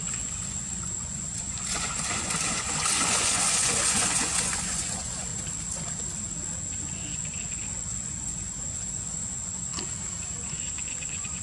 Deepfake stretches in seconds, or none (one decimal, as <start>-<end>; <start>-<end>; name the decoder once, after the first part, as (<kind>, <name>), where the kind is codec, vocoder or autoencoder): 0.0-5.3 (vocoder, Vocos); 6.8-9.7; 10.5-11.4